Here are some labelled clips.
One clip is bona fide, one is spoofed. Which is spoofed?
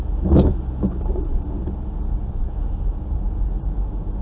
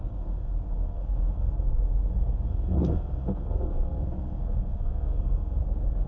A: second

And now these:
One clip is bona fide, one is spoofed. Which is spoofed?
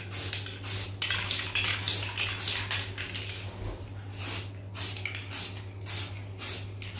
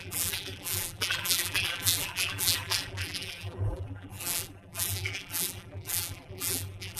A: second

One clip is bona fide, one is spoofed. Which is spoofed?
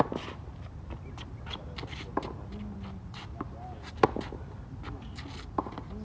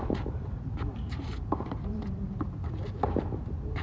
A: second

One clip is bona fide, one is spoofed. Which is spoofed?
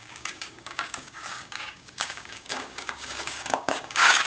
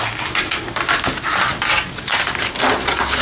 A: first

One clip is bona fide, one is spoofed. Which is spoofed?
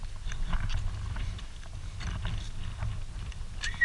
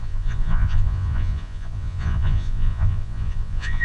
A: second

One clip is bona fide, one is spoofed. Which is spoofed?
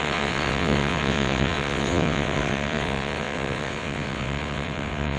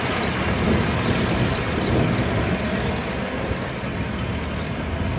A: first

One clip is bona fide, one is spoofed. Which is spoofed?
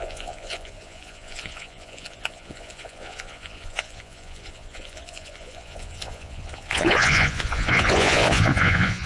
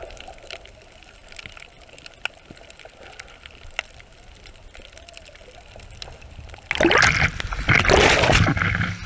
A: first